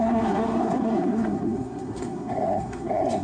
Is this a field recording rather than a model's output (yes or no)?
no